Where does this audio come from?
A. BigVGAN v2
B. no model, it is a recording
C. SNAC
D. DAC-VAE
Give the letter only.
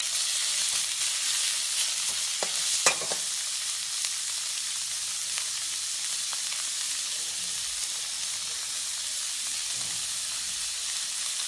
B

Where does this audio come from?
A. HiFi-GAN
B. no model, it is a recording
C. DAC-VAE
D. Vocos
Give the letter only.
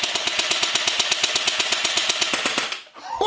B